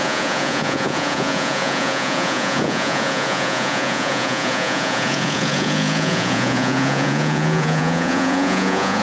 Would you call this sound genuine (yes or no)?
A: no